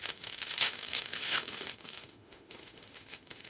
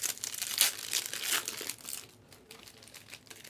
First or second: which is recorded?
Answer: second